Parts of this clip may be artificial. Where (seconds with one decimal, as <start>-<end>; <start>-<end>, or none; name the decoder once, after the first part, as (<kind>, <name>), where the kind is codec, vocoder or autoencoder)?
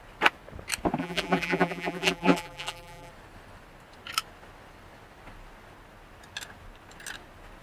1.0-3.1 (vocoder, BigVGAN v2)